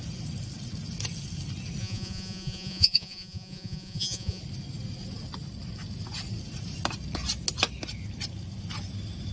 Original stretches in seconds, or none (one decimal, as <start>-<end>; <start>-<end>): 0.0-1.8; 4.4-9.3